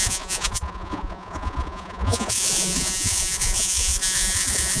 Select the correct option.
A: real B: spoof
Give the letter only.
B